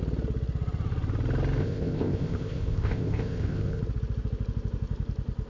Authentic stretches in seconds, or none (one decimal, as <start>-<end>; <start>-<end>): 0.0-1.6; 3.8-5.5